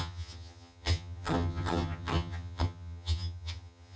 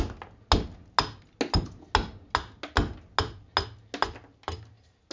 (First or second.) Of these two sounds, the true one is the second